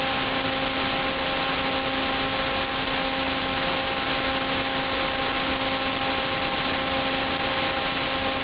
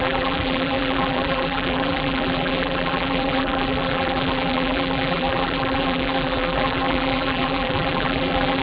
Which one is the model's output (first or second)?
second